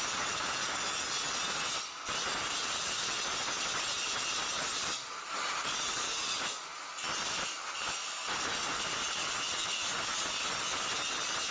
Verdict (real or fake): real